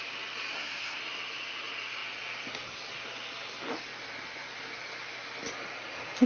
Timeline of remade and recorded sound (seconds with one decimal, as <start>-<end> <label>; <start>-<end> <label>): 0.0-0.5 recorded; 0.5-1.0 remade; 1.0-6.3 recorded